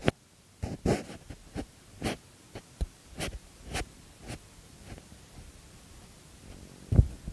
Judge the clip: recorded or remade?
recorded